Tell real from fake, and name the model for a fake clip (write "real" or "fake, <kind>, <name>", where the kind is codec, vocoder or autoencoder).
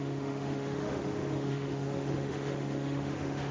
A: fake, autoencoder, DAC-VAE